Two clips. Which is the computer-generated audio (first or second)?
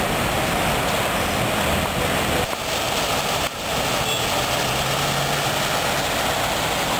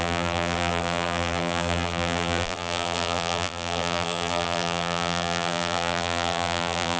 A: second